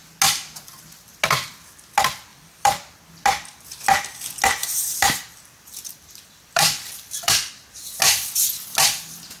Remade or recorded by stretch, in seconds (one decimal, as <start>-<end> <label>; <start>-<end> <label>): 0.0-2.3 recorded; 2.3-3.0 remade; 3.0-4.6 recorded; 4.6-7.5 remade; 7.5-9.4 recorded